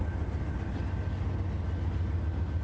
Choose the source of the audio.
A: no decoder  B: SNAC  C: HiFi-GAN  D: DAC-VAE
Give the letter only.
A